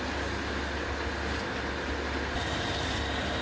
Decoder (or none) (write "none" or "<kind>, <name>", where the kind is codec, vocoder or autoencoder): none